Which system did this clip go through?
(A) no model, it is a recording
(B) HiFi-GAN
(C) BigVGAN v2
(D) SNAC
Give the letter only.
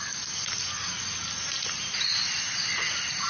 A